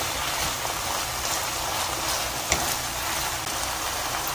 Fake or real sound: real